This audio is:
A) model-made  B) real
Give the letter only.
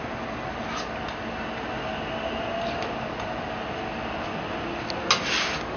B